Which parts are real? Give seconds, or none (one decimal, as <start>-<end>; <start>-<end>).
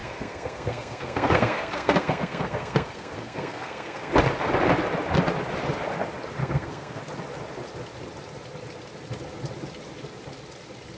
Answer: 4.1-6.4; 7.0-11.0